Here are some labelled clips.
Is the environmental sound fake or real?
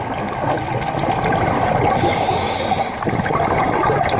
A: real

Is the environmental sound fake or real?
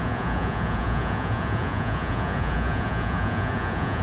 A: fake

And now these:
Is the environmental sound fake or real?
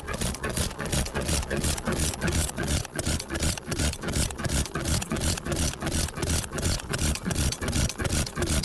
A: fake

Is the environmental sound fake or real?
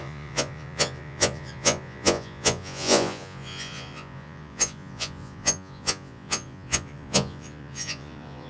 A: fake